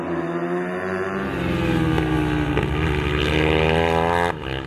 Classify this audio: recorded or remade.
recorded